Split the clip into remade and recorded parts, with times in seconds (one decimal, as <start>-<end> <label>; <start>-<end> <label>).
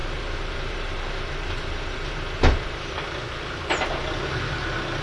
0.0-3.0 remade; 3.0-5.0 recorded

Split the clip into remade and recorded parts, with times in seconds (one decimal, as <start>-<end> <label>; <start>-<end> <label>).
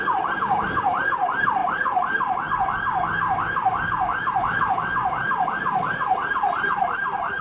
0.0-1.6 recorded; 1.6-2.5 remade; 2.5-3.7 recorded; 3.7-4.6 remade; 4.6-7.4 recorded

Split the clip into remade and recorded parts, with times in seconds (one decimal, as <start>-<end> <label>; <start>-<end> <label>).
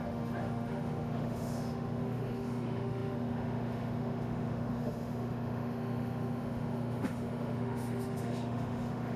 0.0-9.2 remade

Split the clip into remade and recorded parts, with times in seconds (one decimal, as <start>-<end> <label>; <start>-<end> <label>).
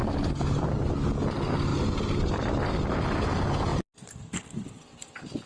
0.0-5.5 recorded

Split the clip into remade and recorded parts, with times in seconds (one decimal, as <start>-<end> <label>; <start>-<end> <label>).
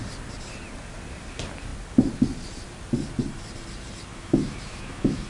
0.0-4.1 recorded; 4.1-5.3 remade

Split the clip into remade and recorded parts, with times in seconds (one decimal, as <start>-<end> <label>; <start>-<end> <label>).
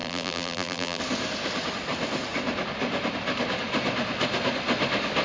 0.0-1.0 remade; 1.0-5.2 recorded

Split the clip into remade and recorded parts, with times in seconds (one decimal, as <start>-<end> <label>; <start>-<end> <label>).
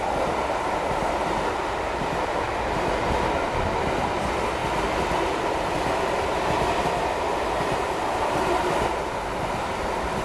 0.0-10.2 recorded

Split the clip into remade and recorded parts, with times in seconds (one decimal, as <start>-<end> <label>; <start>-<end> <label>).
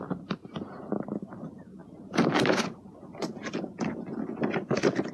0.0-5.1 recorded